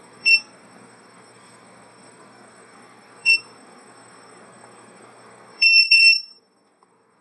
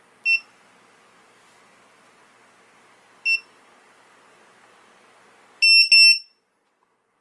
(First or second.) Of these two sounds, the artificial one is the first